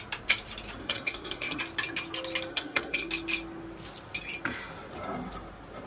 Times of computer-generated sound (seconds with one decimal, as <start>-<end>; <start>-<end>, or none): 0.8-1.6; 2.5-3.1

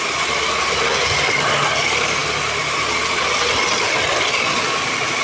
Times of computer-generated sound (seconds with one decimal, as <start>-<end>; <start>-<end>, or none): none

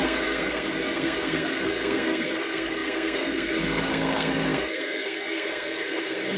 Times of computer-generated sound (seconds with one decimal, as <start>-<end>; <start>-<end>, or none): 0.0-6.4

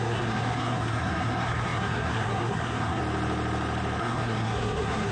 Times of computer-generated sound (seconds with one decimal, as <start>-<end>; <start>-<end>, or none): 0.0-3.0; 4.0-5.1

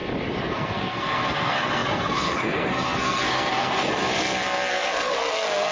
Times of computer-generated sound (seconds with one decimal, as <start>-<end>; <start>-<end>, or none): 0.5-4.0; 4.7-5.7

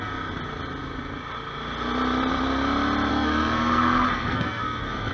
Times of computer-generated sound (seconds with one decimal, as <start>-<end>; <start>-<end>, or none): 3.1-5.1

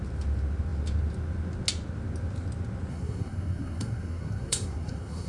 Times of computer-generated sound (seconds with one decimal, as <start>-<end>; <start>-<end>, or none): 2.9-5.3

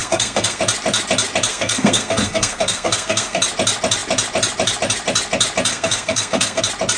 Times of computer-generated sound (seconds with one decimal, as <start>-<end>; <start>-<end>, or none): 0.0-0.6; 1.5-3.4; 5.7-6.6